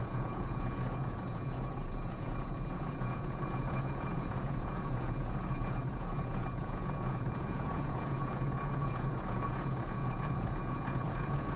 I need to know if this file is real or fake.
fake